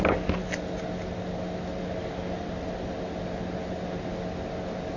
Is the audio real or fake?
real